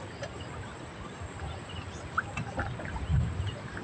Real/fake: real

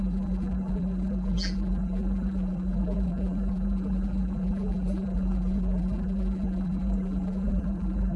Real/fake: fake